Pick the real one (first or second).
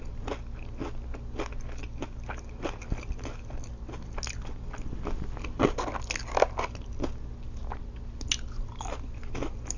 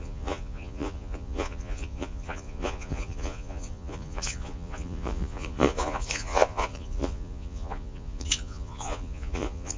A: first